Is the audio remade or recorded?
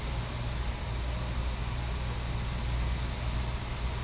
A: recorded